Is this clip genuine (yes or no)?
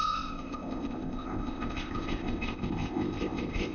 no